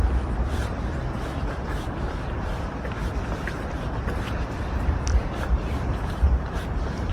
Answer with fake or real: fake